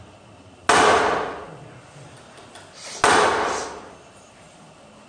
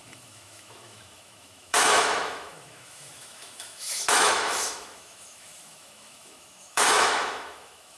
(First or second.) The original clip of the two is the first